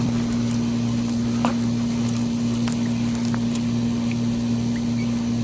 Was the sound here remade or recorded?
remade